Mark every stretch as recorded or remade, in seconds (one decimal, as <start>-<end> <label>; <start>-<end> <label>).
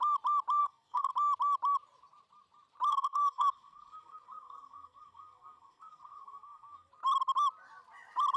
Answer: 0.0-0.6 recorded; 0.6-1.1 remade; 1.1-2.9 recorded; 2.9-6.9 remade; 6.9-8.4 recorded